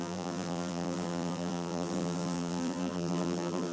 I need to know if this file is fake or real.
fake